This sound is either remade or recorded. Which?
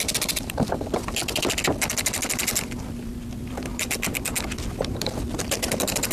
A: remade